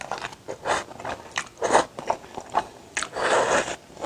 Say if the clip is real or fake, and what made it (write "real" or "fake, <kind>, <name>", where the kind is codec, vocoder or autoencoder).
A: real